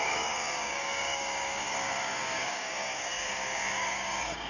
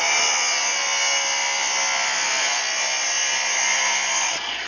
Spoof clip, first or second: first